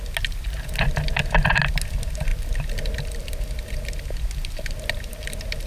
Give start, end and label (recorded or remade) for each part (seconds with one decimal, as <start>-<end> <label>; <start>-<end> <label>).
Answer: 0.0-5.7 recorded